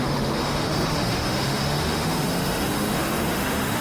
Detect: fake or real fake